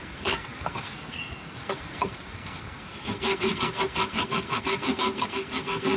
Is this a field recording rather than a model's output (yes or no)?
no